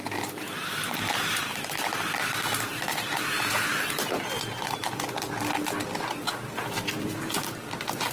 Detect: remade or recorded recorded